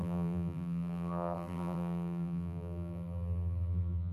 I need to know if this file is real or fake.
fake